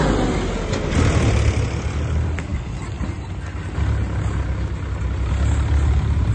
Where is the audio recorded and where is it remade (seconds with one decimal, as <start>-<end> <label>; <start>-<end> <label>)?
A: 0.0-6.3 recorded